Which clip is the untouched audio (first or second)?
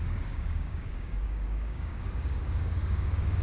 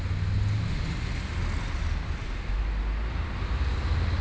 second